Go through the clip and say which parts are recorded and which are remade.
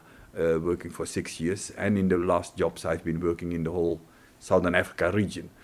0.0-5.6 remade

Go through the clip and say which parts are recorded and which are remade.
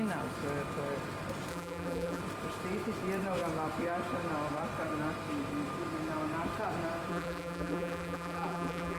0.0-1.5 recorded; 1.5-2.2 remade; 2.2-7.1 recorded; 7.1-9.0 remade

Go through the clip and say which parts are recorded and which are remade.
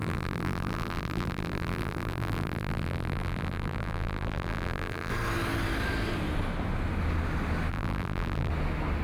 0.0-5.1 remade; 5.1-7.7 recorded; 7.7-8.5 remade; 8.5-9.0 recorded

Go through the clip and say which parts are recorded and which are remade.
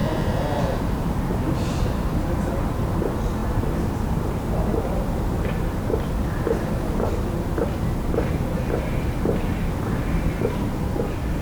0.0-1.4 remade; 1.4-11.4 recorded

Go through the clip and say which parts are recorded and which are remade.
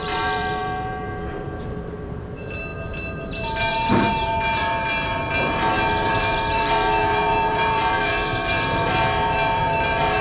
0.0-10.2 remade